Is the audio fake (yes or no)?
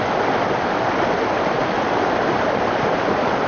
no